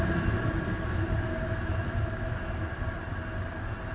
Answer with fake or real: real